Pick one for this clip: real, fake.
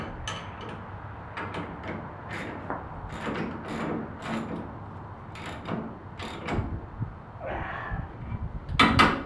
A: real